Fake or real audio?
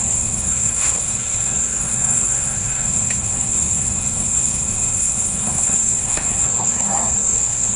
fake